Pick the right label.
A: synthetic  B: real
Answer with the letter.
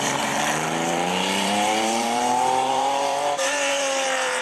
A